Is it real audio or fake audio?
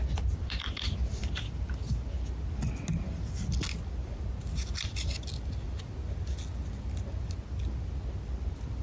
real